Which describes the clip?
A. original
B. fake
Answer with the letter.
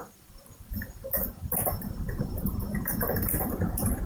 B